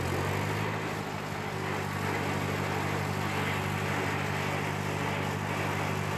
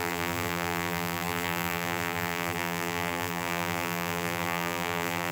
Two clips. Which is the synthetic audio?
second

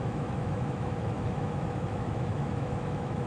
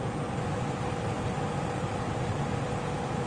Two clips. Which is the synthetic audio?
first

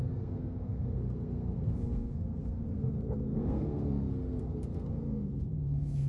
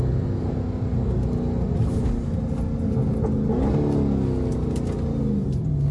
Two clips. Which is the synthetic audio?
first